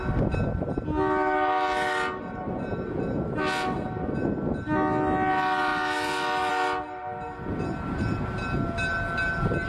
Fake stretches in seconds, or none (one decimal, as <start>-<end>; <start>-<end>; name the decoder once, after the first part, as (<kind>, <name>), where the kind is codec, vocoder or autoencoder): none